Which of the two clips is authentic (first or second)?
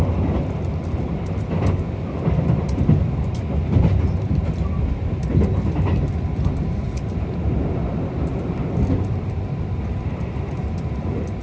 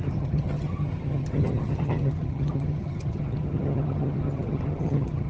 first